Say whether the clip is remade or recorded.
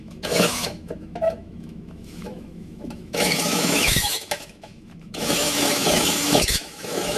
remade